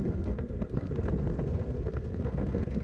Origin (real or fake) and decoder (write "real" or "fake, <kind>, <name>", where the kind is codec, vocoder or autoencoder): fake, codec, SNAC